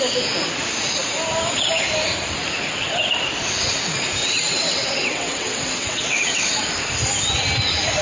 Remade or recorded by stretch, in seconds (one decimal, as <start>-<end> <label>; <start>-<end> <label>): 0.0-4.2 recorded; 4.2-6.6 remade; 6.6-8.0 recorded